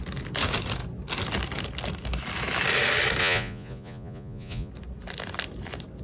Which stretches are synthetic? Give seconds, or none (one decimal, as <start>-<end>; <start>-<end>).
3.2-4.7